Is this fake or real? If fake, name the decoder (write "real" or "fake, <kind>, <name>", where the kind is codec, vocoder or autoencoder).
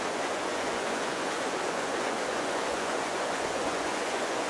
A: fake, vocoder, Vocos